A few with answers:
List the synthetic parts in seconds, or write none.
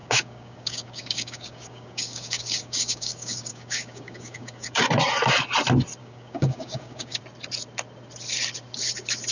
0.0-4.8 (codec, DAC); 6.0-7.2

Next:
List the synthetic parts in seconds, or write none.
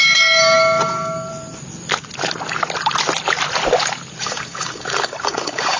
0.0-1.3 (codec, DAC); 4.2-5.8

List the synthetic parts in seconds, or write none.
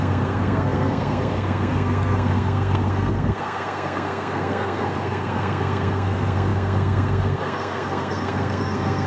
0.0-9.1 (codec, SNAC)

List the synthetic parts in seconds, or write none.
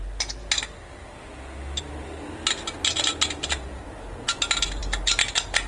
none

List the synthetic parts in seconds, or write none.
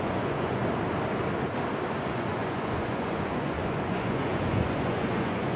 0.0-0.6 (vocoder, Vocos); 2.0-5.6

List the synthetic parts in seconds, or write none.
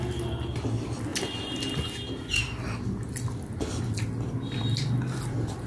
none